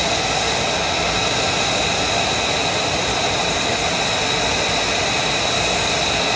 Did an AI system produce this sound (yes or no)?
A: no